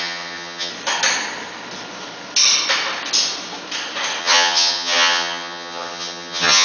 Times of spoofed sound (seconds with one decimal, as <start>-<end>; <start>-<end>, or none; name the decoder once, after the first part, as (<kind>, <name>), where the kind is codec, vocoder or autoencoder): 0.0-0.7 (vocoder, HiFi-GAN); 4.2-6.6